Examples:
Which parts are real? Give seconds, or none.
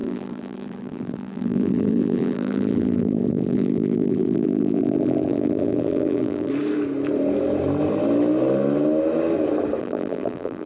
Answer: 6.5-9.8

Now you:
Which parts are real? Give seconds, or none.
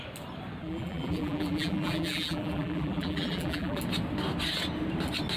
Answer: 0.0-0.6; 3.8-5.4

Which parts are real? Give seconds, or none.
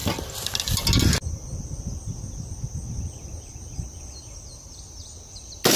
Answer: 0.0-5.8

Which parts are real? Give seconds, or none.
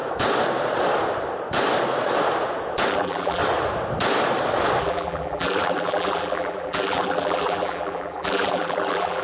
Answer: 0.0-2.9; 3.4-4.8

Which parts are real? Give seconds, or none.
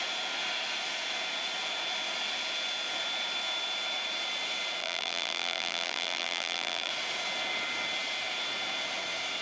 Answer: 0.0-4.8; 6.9-9.4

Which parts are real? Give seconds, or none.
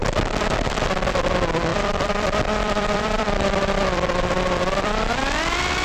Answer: 0.0-1.7; 5.2-5.8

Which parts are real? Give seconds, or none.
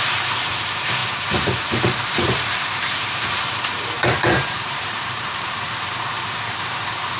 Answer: none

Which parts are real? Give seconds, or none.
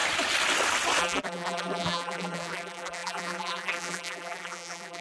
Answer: 0.0-1.0